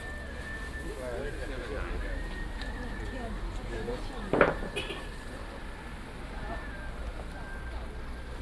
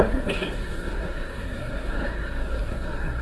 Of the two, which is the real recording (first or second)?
first